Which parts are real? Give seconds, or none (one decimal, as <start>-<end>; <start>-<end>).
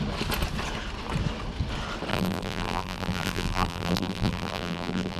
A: 0.0-2.1